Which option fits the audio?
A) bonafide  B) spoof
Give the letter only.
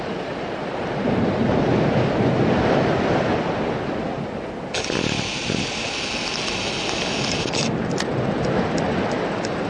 A